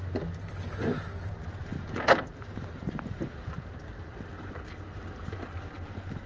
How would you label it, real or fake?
fake